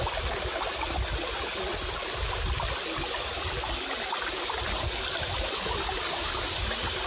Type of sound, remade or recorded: recorded